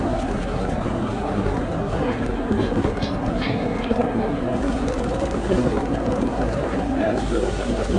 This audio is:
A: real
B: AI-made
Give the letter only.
B